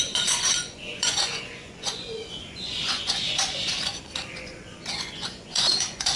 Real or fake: fake